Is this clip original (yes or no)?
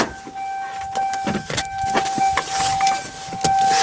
yes